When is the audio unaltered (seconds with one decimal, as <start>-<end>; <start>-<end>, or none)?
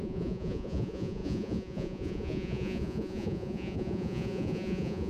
none